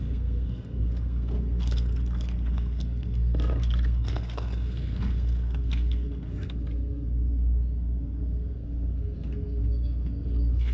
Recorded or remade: remade